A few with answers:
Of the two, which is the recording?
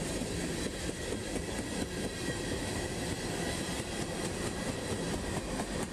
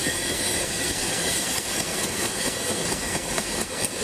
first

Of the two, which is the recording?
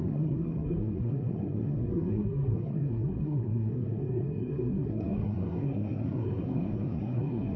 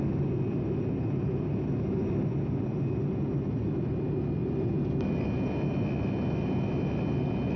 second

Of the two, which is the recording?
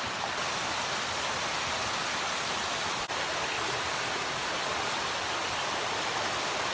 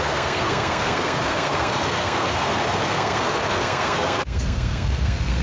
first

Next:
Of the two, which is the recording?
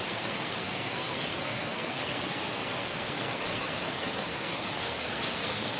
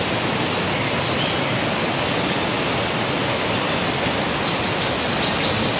second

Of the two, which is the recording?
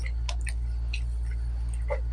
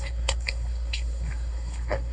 first